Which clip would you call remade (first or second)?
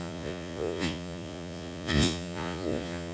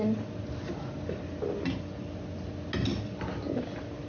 first